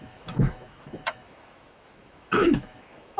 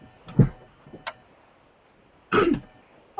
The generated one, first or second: first